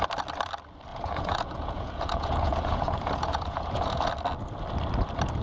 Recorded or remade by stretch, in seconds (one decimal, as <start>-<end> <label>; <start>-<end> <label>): 0.0-0.9 recorded; 0.9-4.1 remade; 4.1-5.4 recorded